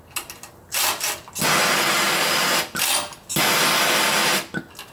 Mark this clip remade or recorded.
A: recorded